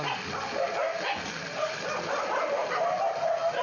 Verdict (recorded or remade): recorded